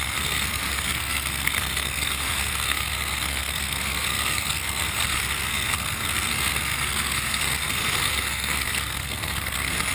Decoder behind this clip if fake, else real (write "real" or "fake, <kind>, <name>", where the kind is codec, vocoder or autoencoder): fake, codec, SNAC